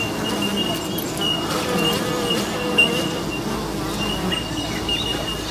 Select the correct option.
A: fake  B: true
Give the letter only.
B